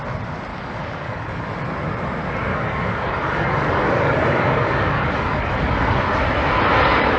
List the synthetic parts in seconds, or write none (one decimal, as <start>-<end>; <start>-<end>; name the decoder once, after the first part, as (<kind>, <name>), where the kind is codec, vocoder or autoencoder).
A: 0.5-1.6 (codec, DAC); 2.5-6.0

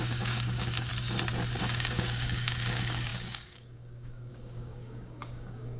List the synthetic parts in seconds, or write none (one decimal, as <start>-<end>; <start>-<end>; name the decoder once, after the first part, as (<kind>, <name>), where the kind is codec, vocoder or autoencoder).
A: 0.0-0.9 (codec, DAC); 1.6-5.8

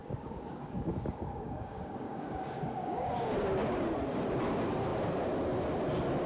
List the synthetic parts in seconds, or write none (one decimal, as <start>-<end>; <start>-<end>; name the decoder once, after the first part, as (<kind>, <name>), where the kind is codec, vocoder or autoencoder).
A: 0.0-3.8 (codec, DAC)

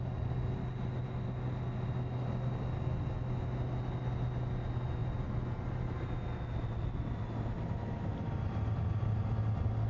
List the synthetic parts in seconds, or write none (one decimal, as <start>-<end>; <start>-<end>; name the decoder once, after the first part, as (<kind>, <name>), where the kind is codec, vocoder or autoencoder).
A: none

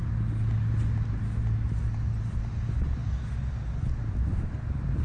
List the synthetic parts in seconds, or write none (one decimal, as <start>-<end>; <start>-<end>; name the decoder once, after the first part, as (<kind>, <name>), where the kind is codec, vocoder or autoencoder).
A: none

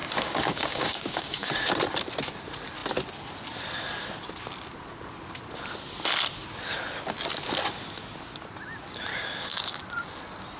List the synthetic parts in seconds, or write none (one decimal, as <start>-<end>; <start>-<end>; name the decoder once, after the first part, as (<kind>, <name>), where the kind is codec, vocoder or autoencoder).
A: 0.0-1.7 (codec, DAC); 9.1-9.8